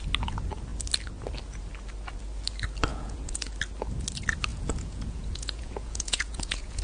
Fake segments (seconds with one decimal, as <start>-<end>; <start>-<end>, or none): 2.9-3.5; 4.5-6.8